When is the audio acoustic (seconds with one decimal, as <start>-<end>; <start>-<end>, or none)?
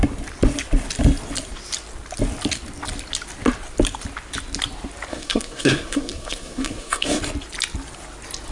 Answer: 0.0-5.1; 7.2-8.5